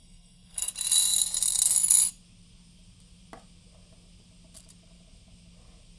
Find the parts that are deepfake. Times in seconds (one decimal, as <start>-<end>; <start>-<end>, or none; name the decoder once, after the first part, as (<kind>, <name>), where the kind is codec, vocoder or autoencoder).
0.0-0.7 (codec, SNAC)